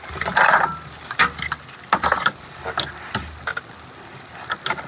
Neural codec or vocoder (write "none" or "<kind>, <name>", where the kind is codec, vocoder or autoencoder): none